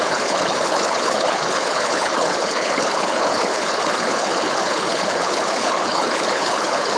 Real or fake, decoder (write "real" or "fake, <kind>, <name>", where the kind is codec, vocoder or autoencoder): fake, codec, HILCodec